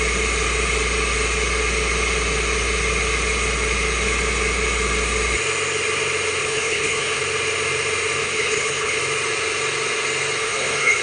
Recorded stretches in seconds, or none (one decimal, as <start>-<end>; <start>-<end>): 0.0-6.4; 7.2-8.2; 9.0-10.4